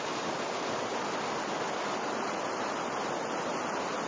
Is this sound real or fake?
real